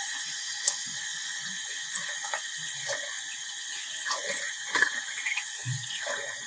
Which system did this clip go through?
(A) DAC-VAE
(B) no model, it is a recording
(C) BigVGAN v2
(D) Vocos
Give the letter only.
D